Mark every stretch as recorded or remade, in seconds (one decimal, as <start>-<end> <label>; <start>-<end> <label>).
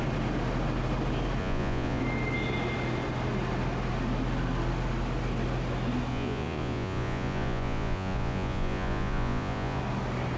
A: 0.0-1.4 recorded; 1.4-2.0 remade; 2.0-6.1 recorded; 6.1-9.8 remade; 9.8-10.4 recorded